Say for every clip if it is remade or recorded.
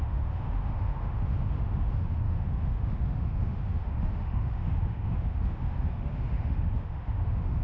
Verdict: remade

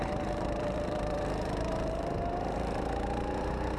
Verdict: remade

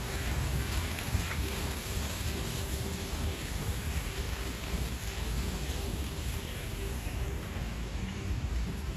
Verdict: remade